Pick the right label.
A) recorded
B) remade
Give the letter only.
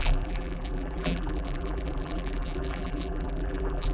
B